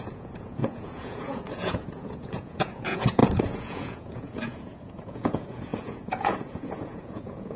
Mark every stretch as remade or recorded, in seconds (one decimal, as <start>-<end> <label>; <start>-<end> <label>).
0.0-7.6 remade